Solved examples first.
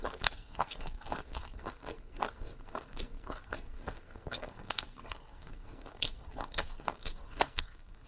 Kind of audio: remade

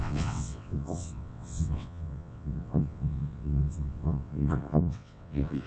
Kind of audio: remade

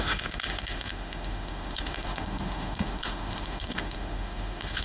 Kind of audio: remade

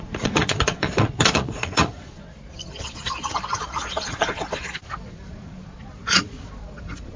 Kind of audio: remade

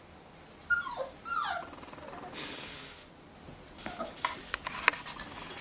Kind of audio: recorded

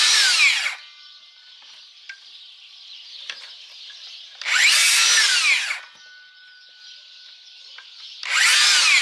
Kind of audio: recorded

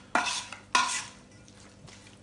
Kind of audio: recorded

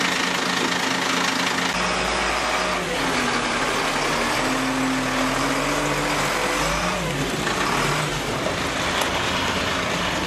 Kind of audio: recorded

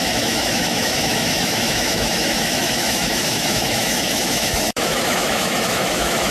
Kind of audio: remade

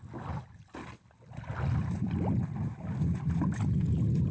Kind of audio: recorded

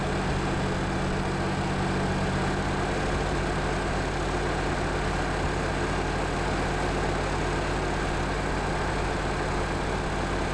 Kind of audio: recorded